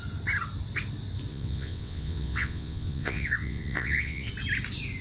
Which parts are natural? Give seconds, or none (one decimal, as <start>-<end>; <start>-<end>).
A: 0.0-1.3; 4.3-5.0